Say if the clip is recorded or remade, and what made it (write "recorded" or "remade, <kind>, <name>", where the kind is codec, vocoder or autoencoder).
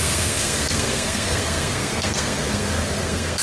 remade, codec, SNAC